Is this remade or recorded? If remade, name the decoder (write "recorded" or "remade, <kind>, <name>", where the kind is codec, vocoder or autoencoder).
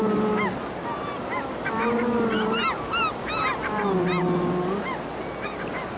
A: recorded